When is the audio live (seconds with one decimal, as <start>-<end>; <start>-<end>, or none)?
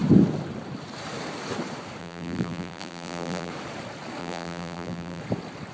0.0-2.0; 3.5-4.2; 5.2-5.7